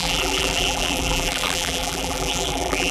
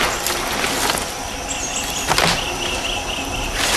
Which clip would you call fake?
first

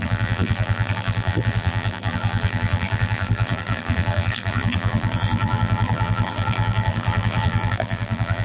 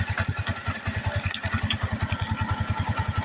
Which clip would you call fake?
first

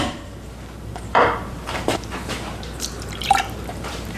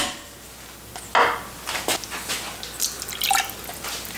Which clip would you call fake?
first